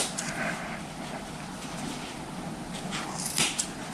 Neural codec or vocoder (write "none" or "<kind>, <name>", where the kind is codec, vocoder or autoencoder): vocoder, BigVGAN v2